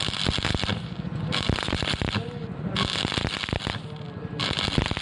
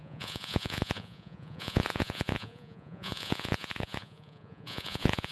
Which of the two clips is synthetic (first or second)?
second